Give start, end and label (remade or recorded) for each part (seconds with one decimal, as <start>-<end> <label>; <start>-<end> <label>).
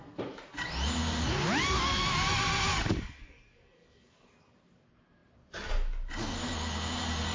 0.0-2.7 recorded; 2.7-4.3 remade; 4.3-7.3 recorded